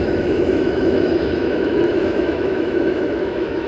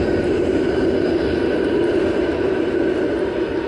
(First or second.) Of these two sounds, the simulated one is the first